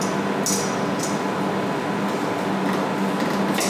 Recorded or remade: recorded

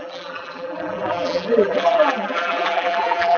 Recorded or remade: remade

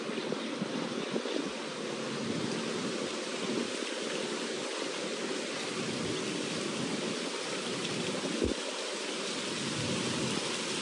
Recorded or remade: recorded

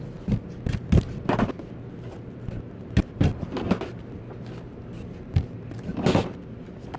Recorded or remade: recorded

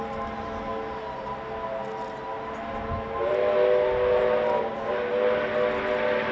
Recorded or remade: recorded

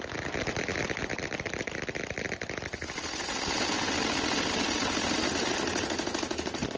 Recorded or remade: recorded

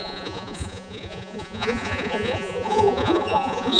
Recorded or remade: remade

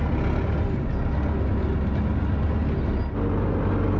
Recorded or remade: recorded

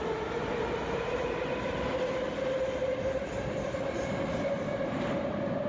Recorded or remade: recorded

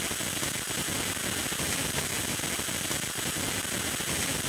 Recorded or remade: recorded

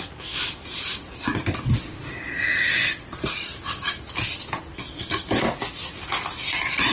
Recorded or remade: recorded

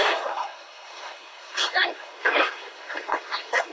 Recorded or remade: remade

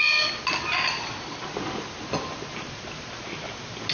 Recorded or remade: recorded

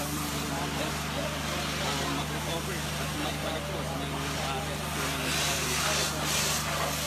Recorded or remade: recorded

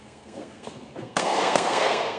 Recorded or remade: remade